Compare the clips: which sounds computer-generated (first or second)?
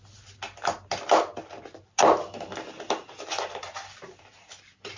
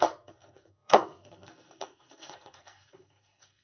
second